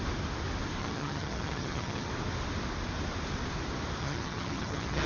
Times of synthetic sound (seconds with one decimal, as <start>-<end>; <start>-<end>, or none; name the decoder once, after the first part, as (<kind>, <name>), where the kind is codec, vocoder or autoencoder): 0.8-2.1 (vocoder, HiFi-GAN); 4.0-5.1